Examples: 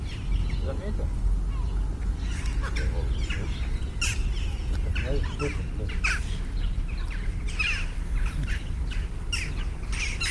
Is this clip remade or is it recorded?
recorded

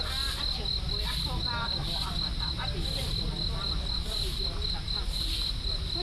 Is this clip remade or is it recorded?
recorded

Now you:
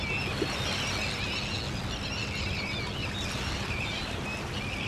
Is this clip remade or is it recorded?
recorded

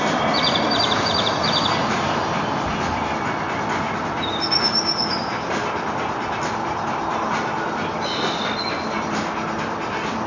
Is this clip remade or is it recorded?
recorded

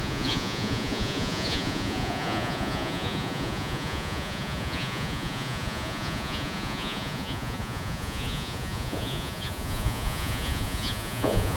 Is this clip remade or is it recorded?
remade